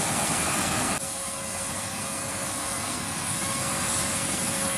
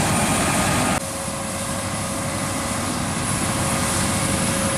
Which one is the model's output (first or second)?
first